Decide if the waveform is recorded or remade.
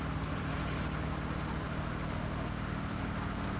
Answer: recorded